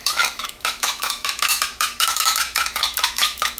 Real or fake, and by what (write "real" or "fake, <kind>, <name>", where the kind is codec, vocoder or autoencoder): fake, autoencoder, DAC-VAE